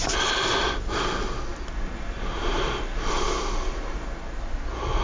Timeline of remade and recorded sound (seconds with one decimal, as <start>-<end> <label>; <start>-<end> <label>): 0.0-5.0 recorded